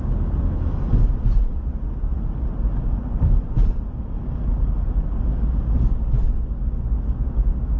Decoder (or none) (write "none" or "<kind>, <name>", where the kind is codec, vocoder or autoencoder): none